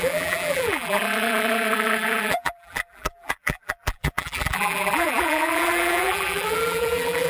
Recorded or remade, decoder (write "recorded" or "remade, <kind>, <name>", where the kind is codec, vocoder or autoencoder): remade, vocoder, BigVGAN v2